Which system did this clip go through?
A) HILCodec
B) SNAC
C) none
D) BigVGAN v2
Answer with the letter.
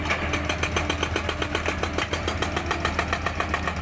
C